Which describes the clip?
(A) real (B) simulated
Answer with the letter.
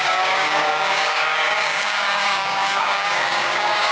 B